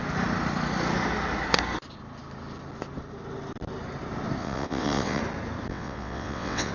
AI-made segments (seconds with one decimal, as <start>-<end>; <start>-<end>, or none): 4.4-5.2; 5.7-6.7

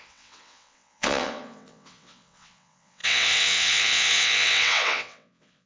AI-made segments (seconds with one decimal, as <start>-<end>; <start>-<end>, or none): 0.0-5.7

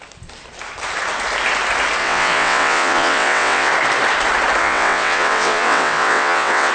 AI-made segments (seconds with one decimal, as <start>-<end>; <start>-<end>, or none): 2.0-3.7; 4.6-6.7

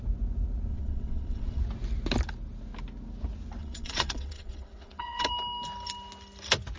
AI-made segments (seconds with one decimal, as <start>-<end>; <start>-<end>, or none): 0.7-1.6; 3.6-5.3

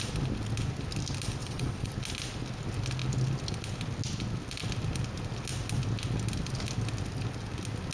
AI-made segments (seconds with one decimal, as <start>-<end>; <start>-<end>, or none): 1.4-1.9

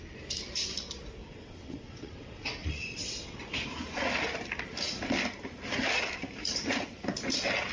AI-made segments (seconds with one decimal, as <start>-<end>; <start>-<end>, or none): 1.3-3.4

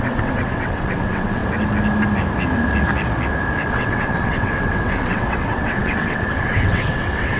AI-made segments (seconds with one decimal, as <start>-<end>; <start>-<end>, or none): 0.0-1.4; 3.7-7.4

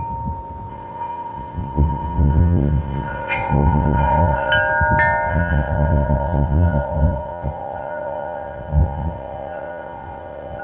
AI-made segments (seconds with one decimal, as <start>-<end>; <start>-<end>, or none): 0.7-4.5; 5.3-10.6